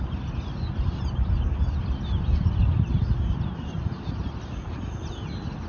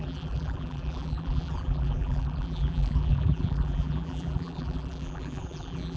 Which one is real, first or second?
first